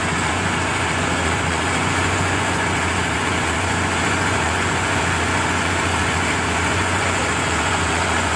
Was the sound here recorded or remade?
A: remade